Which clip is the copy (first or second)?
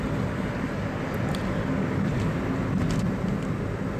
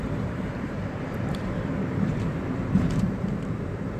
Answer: second